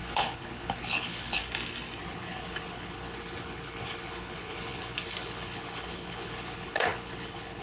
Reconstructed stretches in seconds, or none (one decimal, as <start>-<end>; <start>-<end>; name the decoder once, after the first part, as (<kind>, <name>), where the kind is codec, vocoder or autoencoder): 0.0-1.4 (codec, HILCodec); 2.1-7.6